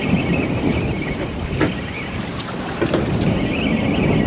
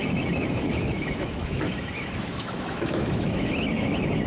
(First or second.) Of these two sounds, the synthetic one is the second